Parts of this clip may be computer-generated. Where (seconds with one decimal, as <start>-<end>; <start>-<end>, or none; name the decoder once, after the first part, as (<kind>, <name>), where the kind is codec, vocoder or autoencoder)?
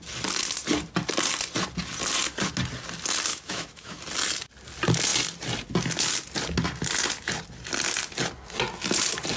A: 3.3-4.0 (autoencoder, DAC-VAE)